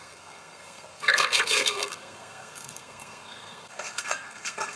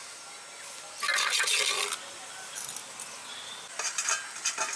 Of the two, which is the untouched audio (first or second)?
second